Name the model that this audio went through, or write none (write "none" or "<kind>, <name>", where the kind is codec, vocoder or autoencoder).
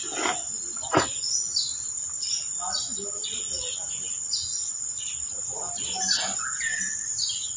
none